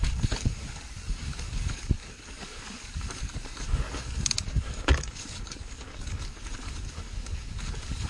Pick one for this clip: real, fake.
fake